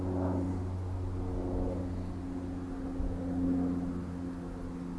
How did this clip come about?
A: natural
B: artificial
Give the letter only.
A